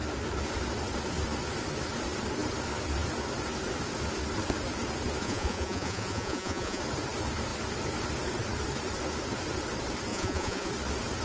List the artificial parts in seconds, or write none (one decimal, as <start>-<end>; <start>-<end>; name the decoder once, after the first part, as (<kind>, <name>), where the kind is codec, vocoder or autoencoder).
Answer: 5.2-6.8 (vocoder, Vocos); 10.1-10.7

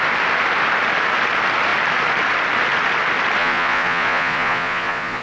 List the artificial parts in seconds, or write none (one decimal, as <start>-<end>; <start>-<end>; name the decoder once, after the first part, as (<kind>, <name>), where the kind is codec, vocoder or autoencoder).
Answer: 3.4-5.2 (vocoder, Vocos)

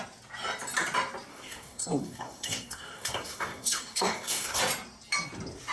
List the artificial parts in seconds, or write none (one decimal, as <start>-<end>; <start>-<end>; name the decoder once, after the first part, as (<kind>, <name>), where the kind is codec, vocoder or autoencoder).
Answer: 1.3-4.6 (codec, SNAC)

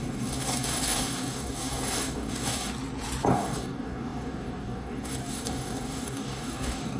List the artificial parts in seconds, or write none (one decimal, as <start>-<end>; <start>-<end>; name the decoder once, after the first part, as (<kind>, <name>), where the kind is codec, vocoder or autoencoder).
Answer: 0.0-2.7 (codec, DAC); 3.3-7.0

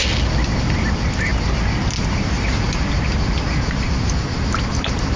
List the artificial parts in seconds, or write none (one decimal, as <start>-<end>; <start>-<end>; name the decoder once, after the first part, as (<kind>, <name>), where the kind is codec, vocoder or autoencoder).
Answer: none

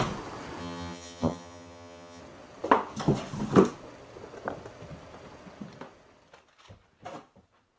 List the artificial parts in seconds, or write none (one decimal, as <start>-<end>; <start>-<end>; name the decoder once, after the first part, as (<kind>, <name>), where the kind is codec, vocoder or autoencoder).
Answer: 0.6-2.2 (vocoder, HiFi-GAN)

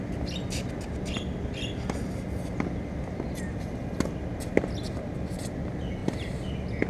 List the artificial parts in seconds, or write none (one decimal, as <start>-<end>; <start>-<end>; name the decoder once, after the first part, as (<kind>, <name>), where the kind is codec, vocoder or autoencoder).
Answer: none